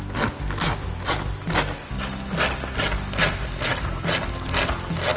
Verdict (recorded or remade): recorded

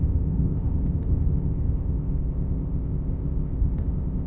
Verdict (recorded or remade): remade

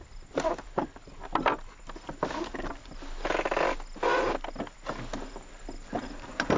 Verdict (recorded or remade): recorded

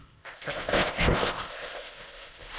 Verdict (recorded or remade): remade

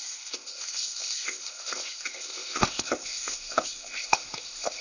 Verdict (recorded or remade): remade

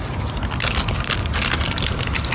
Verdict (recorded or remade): recorded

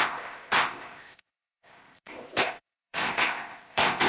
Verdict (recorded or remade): remade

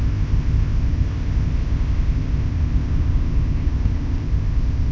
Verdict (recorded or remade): remade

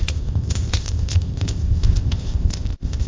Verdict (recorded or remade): remade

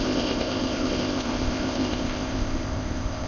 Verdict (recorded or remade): remade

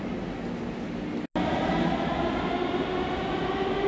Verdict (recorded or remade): recorded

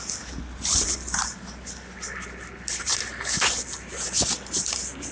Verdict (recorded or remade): recorded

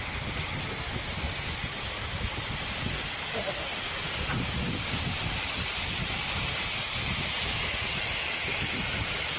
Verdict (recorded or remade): recorded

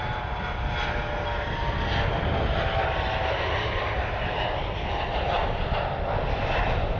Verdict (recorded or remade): recorded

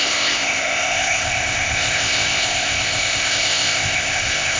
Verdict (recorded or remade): remade